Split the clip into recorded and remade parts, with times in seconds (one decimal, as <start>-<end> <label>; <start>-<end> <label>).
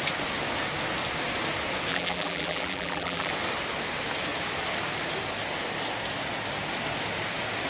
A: 0.0-1.9 recorded; 1.9-3.3 remade; 3.3-7.7 recorded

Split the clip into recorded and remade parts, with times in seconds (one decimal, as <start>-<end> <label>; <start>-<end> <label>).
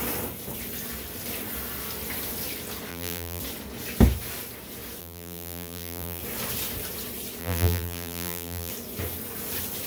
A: 0.0-2.9 recorded; 2.9-3.4 remade; 3.4-5.0 recorded; 5.0-6.2 remade; 6.2-7.4 recorded; 7.4-8.7 remade; 8.7-9.9 recorded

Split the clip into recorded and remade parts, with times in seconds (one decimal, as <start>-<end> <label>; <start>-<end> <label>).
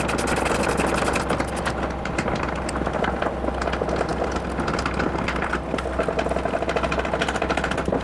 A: 0.0-8.0 recorded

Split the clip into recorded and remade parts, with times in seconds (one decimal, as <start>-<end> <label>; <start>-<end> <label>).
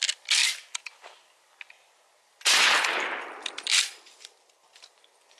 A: 0.0-5.4 recorded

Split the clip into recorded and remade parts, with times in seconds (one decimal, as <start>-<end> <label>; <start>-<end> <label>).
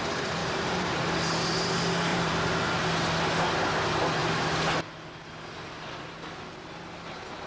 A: 0.0-0.4 recorded; 0.4-1.0 remade; 1.0-2.1 recorded; 2.1-2.8 remade; 2.8-7.5 recorded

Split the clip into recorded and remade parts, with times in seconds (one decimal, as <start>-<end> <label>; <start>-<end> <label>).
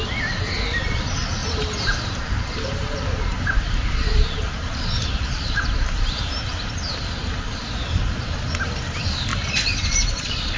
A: 0.0-1.4 recorded; 1.4-6.7 remade; 6.7-9.3 recorded; 9.3-10.2 remade; 10.2-10.6 recorded